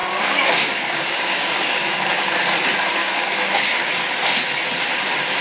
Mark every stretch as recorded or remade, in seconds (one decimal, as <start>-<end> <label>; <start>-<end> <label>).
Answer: 0.0-2.3 remade; 2.3-3.0 recorded; 3.0-3.9 remade; 3.9-5.4 recorded